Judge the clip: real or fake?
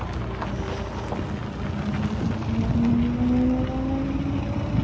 real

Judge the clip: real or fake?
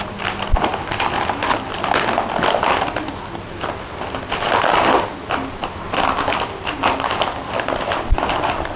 real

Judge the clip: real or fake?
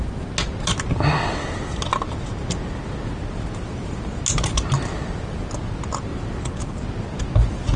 real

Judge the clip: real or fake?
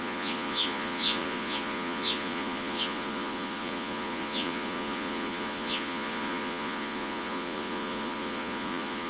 fake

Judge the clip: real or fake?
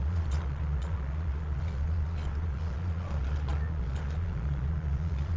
fake